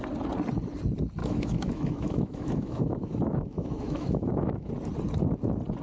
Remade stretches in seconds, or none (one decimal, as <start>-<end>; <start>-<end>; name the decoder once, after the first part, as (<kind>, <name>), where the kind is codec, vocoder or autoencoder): 1.2-4.7 (autoencoder, DAC-VAE)